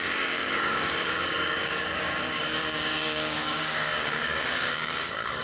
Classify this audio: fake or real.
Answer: fake